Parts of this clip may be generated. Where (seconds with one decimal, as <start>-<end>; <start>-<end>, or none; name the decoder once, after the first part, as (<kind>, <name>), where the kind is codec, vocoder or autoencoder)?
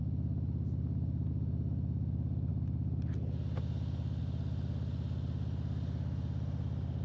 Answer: none